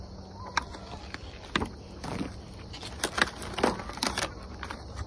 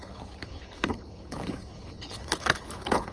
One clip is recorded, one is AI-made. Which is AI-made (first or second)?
second